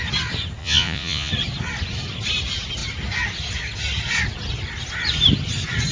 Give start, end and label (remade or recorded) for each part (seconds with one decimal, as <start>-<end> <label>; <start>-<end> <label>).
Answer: 0.0-0.6 recorded; 0.6-1.3 remade; 1.3-5.9 recorded